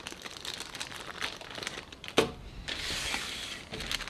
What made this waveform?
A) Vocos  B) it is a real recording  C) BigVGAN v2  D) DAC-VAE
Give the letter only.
B